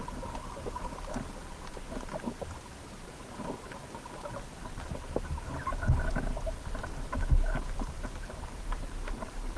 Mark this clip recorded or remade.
recorded